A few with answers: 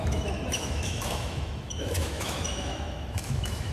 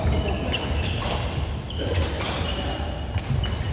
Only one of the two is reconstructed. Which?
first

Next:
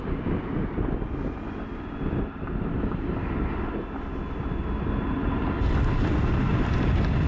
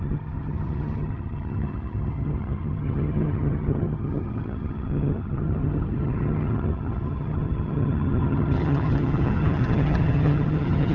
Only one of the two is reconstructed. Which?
second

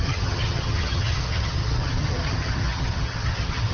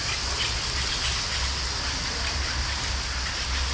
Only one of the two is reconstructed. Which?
first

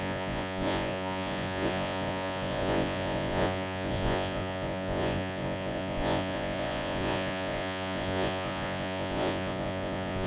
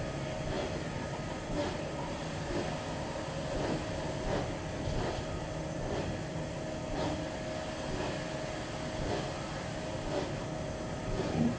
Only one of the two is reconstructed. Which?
first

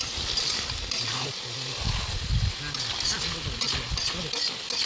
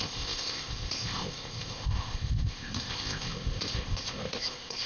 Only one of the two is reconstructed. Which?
second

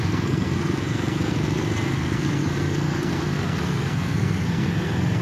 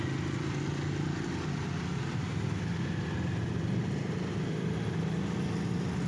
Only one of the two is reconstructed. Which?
first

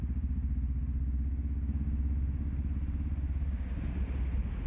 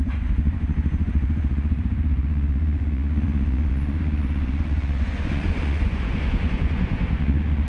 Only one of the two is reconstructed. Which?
second